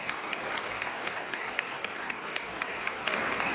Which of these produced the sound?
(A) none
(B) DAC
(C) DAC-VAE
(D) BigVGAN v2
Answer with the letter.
B